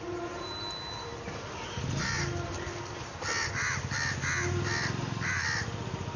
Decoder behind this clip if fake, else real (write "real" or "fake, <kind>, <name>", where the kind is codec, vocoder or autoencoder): real